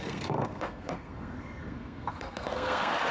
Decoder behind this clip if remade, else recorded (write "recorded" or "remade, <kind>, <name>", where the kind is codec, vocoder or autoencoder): remade, codec, SNAC